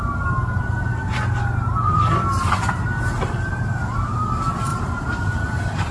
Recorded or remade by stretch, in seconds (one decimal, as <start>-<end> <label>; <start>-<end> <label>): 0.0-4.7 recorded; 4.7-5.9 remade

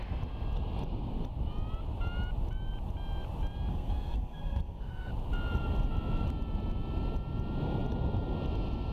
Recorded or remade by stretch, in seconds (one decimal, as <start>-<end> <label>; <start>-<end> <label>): 0.0-3.7 recorded; 3.7-5.1 remade; 5.1-8.9 recorded

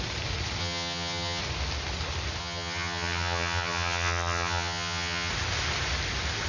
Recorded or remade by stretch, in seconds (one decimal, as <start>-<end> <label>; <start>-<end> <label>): 0.0-0.6 recorded; 0.6-1.4 remade; 1.4-2.4 recorded; 2.4-5.3 remade; 5.3-6.5 recorded

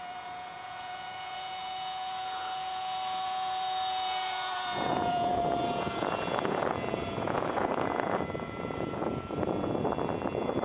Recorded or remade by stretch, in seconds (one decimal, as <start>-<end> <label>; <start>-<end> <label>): 0.0-10.6 remade

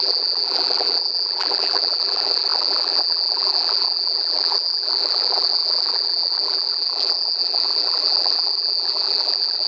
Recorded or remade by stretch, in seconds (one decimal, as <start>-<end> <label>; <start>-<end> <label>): 0.0-9.7 remade

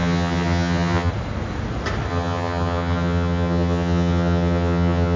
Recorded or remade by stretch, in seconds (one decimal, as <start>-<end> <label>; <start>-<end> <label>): 0.0-1.1 remade; 1.1-2.1 recorded; 2.1-5.2 remade

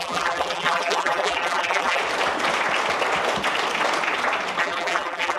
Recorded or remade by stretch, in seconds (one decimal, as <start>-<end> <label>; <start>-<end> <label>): 0.0-2.0 remade; 2.0-4.6 recorded; 4.6-5.4 remade

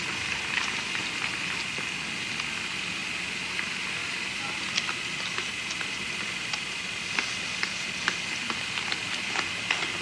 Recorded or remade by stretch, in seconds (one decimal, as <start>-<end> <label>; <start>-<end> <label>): 0.0-10.0 recorded